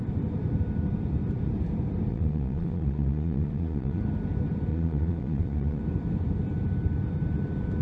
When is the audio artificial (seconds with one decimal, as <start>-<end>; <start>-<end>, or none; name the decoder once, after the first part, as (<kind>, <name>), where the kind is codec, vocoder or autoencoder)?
2.1-4.0 (vocoder, Vocos); 4.7-5.8